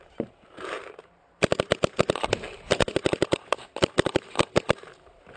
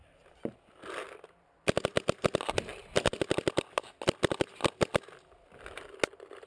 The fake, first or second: first